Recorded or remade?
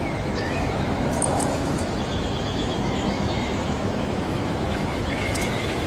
remade